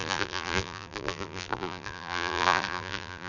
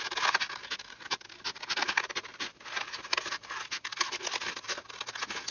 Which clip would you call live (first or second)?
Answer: second